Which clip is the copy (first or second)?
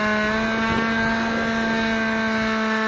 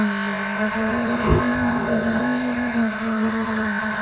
second